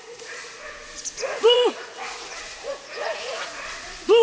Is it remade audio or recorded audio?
remade